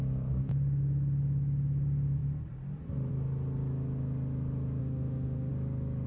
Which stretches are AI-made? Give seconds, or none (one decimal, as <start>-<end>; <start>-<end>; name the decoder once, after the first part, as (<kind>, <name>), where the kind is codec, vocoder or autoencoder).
4.8-5.5 (autoencoder, DAC-VAE)